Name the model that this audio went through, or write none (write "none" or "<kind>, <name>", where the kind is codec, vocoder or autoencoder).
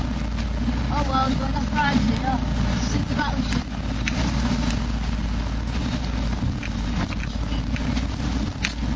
none